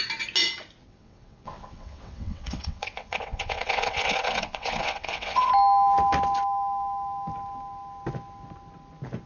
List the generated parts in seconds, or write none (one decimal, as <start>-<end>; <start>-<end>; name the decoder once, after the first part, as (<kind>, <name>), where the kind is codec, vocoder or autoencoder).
0.8-5.5 (vocoder, WaveNeXt)